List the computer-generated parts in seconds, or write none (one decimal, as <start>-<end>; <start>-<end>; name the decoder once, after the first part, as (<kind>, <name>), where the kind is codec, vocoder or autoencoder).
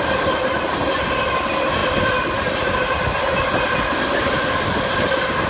none